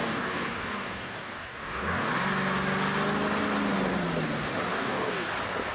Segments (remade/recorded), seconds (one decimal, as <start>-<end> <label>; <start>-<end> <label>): 0.0-2.1 remade; 2.1-4.7 recorded; 4.7-5.3 remade; 5.3-5.7 recorded